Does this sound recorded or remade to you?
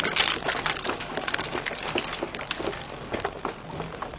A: recorded